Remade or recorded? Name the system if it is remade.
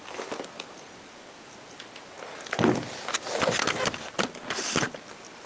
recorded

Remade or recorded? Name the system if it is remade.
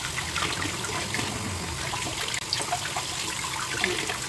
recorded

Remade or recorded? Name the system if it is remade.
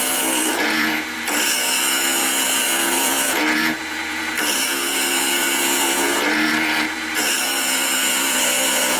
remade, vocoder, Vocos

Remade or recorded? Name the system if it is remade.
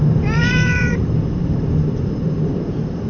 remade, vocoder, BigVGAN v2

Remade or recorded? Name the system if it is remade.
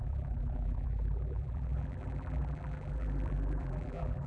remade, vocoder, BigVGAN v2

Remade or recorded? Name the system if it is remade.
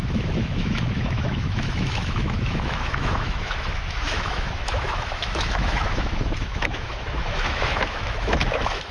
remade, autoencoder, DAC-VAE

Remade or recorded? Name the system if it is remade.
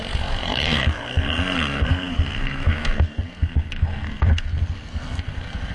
remade, codec, SNAC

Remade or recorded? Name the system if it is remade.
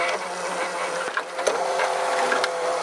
recorded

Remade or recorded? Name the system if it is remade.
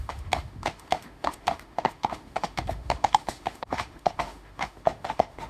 remade, autoencoder, DAC-VAE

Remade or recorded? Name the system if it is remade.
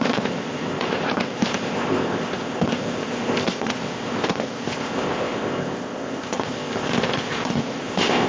remade, codec, ZipCodec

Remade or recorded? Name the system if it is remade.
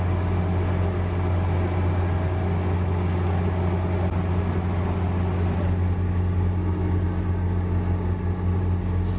recorded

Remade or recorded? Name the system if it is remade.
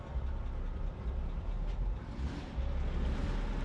recorded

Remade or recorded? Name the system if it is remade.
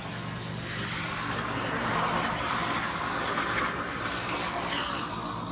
recorded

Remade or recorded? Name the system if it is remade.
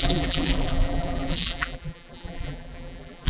remade, vocoder, BigVGAN v2